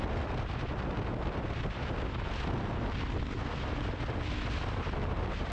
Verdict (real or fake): real